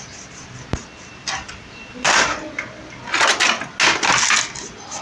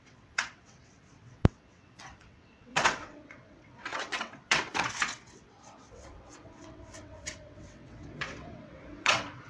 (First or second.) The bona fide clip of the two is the first